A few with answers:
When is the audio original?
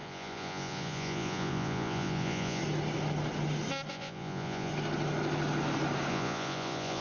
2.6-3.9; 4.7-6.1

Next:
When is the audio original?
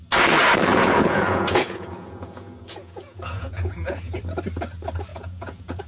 0.0-0.7; 4.2-5.1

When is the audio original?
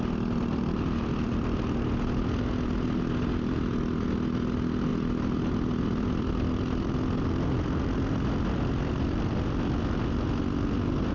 0.0-11.1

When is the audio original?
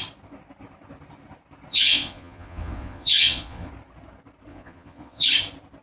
0.0-1.7; 3.7-4.5; 5.3-5.8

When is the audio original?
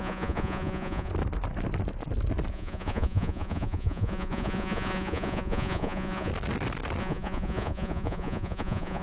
1.1-2.5; 6.3-7.0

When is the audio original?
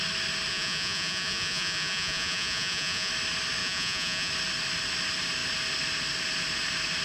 0.0-0.5; 3.1-3.6; 4.3-7.0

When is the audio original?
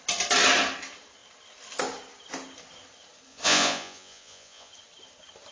0.0-3.3; 4.7-5.5